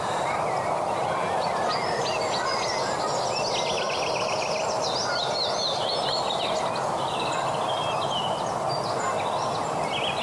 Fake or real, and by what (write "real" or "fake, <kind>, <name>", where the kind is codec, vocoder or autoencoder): real